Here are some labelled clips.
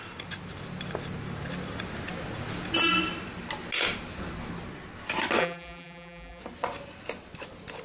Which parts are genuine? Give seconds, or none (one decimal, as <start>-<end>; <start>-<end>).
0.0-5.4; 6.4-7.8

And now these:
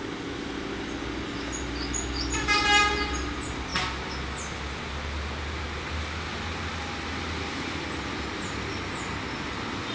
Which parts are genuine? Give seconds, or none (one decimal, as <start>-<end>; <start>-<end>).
0.0-9.9

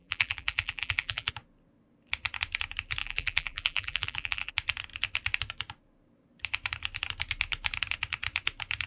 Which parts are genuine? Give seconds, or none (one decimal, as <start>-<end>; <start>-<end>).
1.3-3.0; 4.5-8.9

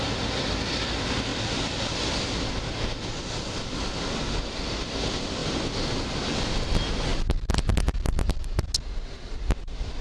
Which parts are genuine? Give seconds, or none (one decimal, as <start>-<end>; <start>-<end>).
0.0-10.0

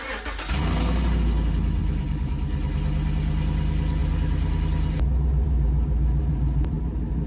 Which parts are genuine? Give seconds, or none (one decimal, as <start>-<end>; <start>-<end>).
0.0-1.8; 2.3-4.0

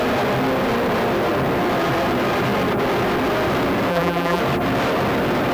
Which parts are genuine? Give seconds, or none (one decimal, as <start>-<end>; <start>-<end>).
0.0-3.9; 4.4-5.5